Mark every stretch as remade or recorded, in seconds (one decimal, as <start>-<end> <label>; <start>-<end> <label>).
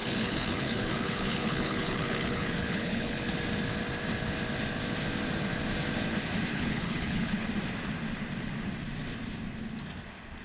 0.0-3.3 remade; 3.3-6.5 recorded; 6.5-7.5 remade; 7.5-10.4 recorded